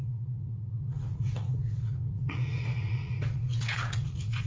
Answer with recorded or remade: remade